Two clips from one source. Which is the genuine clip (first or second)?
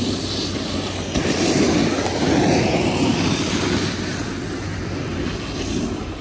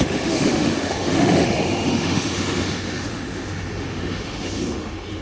first